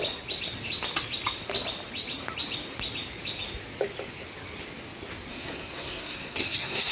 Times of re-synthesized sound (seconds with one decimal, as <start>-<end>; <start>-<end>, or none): 5.3-6.9